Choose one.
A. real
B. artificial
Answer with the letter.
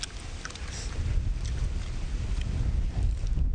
A